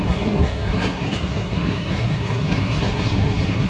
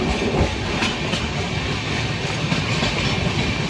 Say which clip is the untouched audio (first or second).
second